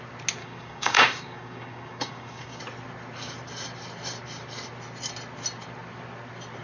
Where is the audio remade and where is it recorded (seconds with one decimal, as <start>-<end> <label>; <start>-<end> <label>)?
0.0-0.4 recorded; 0.4-2.6 remade; 2.6-6.6 recorded